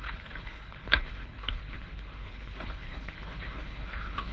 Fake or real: fake